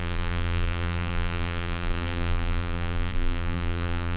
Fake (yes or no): yes